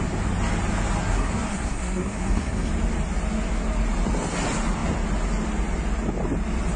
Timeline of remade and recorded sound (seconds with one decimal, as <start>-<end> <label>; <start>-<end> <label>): 0.0-1.0 recorded; 1.0-2.7 remade; 2.7-6.8 recorded